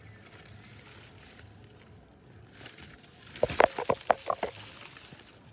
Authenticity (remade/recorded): recorded